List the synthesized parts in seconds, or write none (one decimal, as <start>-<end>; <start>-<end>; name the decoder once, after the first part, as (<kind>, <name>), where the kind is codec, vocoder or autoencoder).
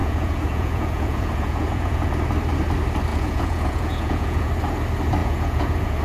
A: 0.0-2.1 (vocoder, Vocos); 3.1-4.5; 5.2-6.0